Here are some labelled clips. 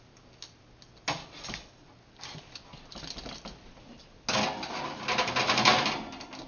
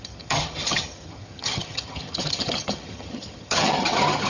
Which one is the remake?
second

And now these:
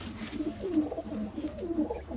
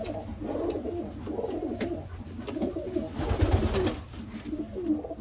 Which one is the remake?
first